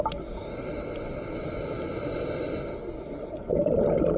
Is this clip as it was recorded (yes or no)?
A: yes